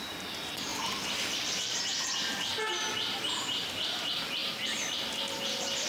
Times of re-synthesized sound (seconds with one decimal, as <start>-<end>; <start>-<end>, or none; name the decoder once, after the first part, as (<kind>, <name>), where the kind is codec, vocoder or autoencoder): 0.7-1.8 (vocoder, BigVGAN v2)